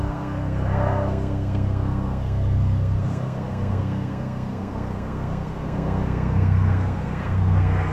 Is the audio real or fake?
fake